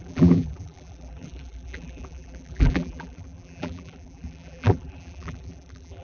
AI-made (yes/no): yes